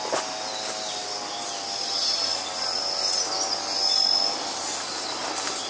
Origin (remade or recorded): recorded